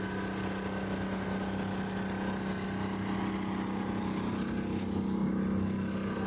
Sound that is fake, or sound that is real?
real